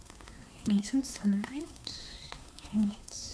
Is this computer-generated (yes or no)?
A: yes